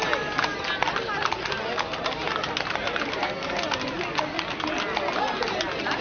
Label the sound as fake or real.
real